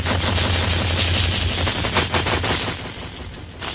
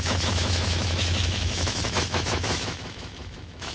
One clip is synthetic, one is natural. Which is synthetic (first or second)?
second